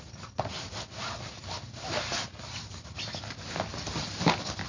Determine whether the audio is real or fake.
real